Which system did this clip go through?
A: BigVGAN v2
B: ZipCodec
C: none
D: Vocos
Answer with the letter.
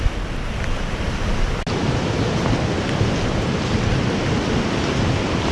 C